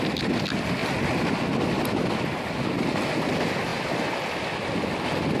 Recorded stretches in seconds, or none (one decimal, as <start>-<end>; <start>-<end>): 0.0-5.4